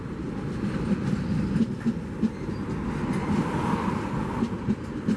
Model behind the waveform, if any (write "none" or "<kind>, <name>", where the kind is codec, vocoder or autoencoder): none